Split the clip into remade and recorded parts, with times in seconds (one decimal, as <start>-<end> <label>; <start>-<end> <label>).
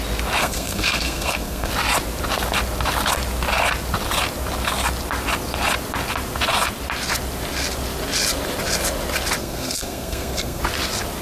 0.0-0.4 recorded; 0.4-1.7 remade; 1.7-9.4 recorded; 9.4-10.6 remade; 10.6-11.2 recorded